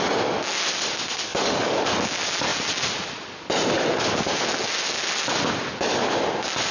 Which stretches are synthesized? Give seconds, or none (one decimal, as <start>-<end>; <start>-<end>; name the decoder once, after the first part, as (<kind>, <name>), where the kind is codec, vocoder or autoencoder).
1.3-1.9 (codec, DAC)